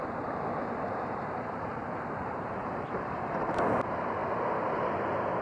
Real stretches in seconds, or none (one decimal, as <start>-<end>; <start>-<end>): 0.0-0.5; 3.7-5.4